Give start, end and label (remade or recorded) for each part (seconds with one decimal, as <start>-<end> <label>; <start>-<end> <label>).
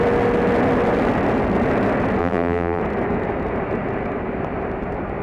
0.0-2.2 recorded; 2.2-2.8 remade; 2.8-5.2 recorded